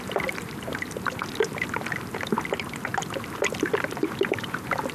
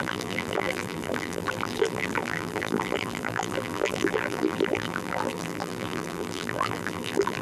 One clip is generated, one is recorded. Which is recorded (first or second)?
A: first